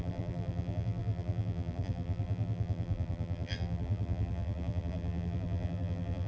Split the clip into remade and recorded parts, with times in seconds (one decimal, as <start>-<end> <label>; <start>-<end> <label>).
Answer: 0.0-6.3 remade